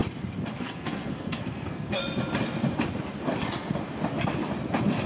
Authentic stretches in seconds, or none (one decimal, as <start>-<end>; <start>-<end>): 0.0-0.6; 2.0-5.1